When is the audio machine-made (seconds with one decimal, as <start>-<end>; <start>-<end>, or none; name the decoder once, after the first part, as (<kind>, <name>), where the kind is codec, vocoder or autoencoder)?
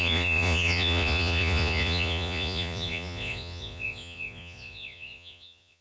0.0-5.8 (vocoder, Vocos)